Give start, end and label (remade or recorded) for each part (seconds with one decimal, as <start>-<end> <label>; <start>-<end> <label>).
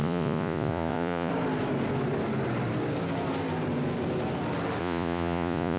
0.0-1.3 remade; 1.3-4.8 recorded; 4.8-5.8 remade